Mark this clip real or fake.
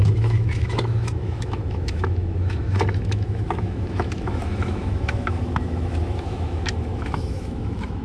fake